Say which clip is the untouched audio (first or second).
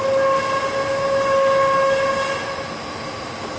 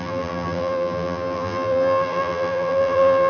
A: first